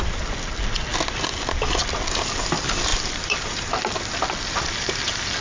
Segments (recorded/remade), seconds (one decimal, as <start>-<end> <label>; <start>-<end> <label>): 0.0-2.9 recorded; 2.9-5.0 remade; 5.0-5.4 recorded